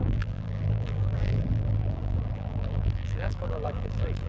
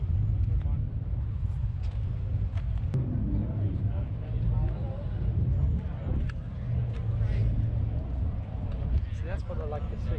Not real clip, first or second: first